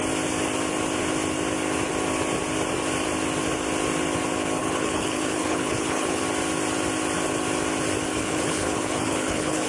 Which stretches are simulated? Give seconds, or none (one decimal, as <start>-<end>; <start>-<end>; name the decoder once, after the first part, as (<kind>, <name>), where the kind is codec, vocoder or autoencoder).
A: 4.6-6.2 (codec, HILCodec); 8.1-9.7